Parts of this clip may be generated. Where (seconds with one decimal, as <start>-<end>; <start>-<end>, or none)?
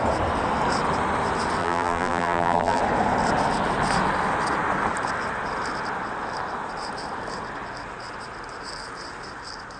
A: 1.6-2.8